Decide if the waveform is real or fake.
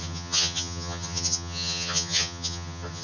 fake